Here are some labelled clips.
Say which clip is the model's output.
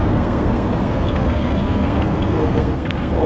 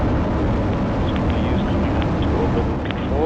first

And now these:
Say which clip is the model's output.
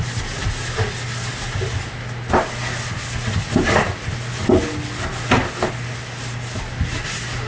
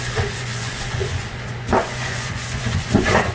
second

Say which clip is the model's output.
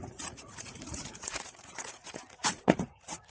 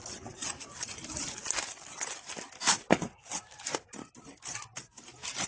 first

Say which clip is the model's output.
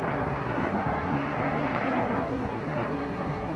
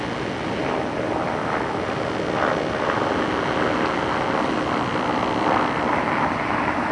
first